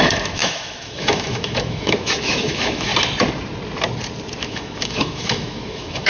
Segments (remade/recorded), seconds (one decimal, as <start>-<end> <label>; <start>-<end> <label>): 0.0-2.9 remade; 2.9-4.4 recorded; 4.4-6.1 remade